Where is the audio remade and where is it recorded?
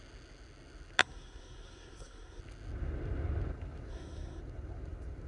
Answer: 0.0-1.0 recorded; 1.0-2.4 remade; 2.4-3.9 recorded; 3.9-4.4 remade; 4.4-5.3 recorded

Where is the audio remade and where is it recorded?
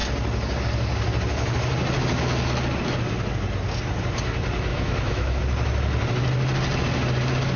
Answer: 0.0-4.7 recorded; 4.7-5.4 remade; 5.4-7.6 recorded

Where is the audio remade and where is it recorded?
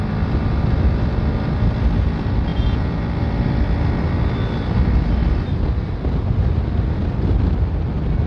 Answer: 0.0-2.5 recorded; 2.5-3.0 remade; 3.0-8.3 recorded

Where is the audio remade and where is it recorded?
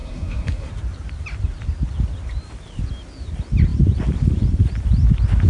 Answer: 0.0-0.7 remade; 0.7-5.5 recorded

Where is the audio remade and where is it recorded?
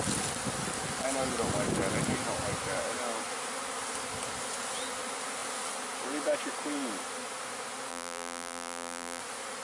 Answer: 0.0-7.9 recorded; 7.9-9.2 remade; 9.2-9.6 recorded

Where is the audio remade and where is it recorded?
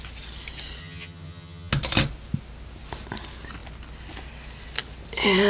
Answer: 0.0-0.8 recorded; 0.8-1.7 remade; 1.7-5.5 recorded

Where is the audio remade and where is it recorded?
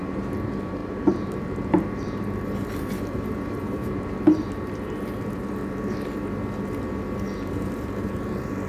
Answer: 0.0-5.6 remade; 5.6-7.5 recorded; 7.5-8.7 remade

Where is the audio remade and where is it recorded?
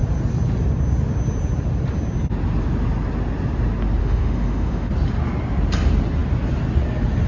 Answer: 0.0-4.0 recorded; 4.0-4.9 remade; 4.9-7.3 recorded